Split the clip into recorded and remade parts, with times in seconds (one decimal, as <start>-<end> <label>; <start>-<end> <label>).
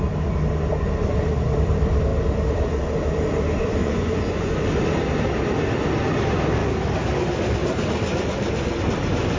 0.0-3.8 recorded; 3.8-4.6 remade; 4.6-9.4 recorded